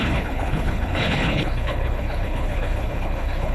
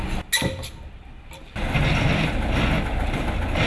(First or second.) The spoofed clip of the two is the first